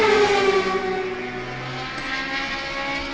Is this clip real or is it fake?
real